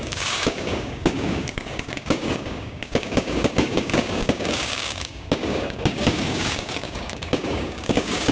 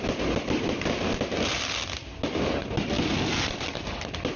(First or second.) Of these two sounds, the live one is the second